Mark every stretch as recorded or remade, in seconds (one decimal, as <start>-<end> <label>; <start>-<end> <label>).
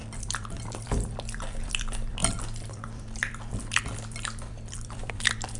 0.0-5.6 remade